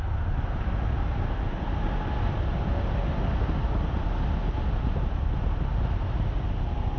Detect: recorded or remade recorded